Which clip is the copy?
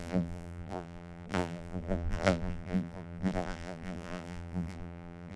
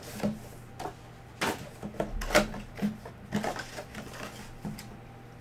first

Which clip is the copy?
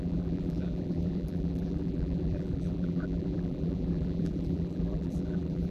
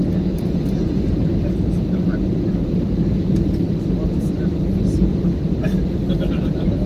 first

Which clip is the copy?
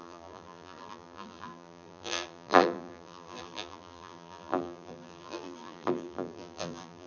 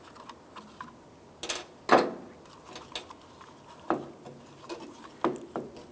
first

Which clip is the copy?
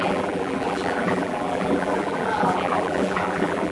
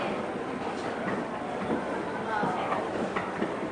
first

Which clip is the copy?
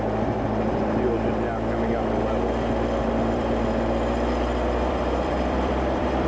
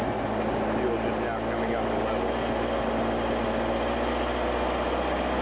first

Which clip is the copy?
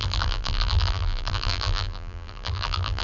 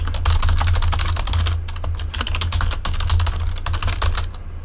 first